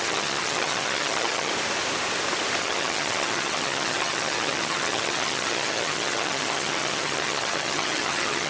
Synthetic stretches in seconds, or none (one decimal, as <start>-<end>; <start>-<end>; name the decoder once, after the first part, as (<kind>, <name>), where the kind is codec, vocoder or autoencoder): 0.0-1.5 (vocoder, HiFi-GAN); 2.6-8.5